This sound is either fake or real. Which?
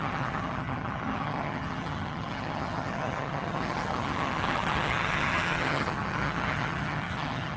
fake